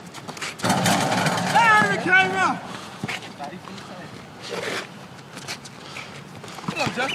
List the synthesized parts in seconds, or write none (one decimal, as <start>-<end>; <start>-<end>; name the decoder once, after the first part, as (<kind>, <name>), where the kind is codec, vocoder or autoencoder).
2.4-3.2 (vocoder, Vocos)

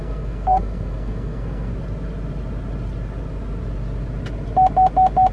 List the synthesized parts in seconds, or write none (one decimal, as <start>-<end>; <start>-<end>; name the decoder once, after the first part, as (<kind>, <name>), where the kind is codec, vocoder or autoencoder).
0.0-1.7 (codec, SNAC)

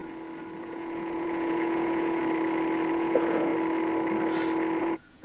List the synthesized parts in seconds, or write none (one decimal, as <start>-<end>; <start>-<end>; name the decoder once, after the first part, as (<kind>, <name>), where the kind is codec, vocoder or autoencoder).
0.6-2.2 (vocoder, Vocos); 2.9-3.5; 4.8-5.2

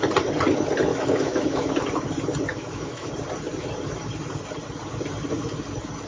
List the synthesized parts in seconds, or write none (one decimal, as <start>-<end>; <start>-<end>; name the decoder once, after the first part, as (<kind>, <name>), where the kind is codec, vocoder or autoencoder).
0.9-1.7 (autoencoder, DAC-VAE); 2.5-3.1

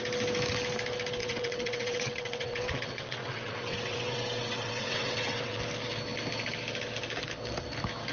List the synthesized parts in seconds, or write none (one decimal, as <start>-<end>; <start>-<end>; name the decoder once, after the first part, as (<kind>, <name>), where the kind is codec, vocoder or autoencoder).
1.2-5.6 (vocoder, WaveNeXt)